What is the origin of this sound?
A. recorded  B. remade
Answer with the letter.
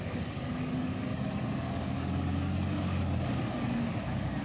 B